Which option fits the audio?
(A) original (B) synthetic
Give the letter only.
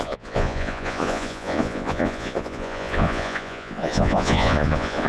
B